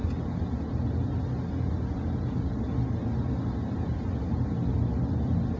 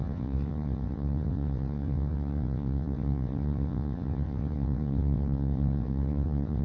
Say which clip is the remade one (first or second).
second